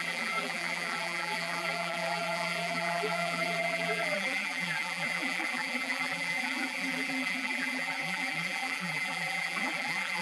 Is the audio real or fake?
fake